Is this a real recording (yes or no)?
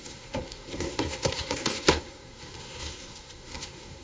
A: no